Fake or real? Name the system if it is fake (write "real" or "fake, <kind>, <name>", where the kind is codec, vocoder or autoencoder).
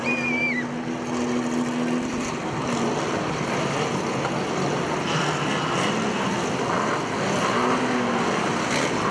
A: real